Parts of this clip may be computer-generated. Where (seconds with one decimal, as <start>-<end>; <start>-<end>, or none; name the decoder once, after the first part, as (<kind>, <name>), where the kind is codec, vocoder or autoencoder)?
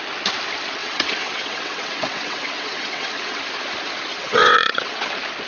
0.8-3.4 (vocoder, WaveNeXt); 4.1-5.1